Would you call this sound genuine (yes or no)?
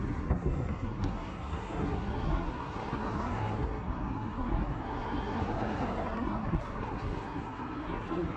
no